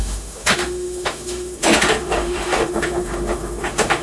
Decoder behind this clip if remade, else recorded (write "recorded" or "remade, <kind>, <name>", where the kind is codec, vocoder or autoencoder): remade, autoencoder, DAC-VAE